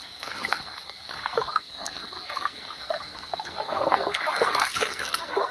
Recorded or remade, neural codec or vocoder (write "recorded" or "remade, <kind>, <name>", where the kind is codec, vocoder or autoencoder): remade, codec, SNAC